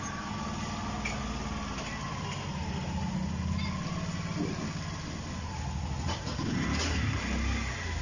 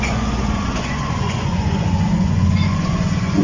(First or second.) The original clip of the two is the first